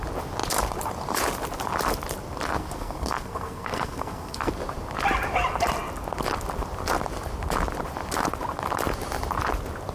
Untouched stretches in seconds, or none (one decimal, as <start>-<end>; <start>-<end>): 0.0-2.5; 4.5-9.9